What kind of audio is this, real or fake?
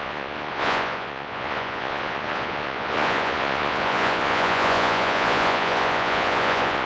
fake